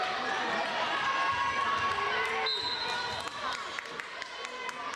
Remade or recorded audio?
recorded